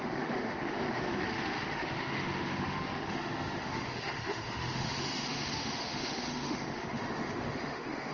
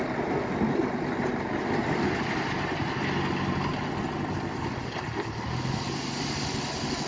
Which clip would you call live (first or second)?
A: second